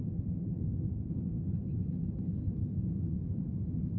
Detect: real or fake real